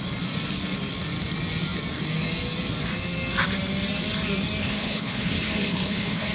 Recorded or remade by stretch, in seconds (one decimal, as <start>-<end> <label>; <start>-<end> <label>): 0.0-4.6 recorded; 4.6-6.3 remade